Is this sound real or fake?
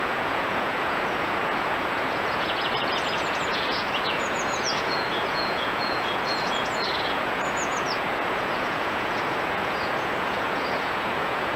fake